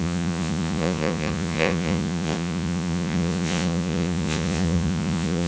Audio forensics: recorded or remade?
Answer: remade